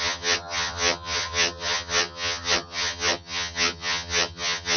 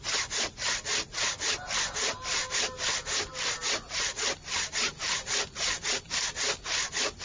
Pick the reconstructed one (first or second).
first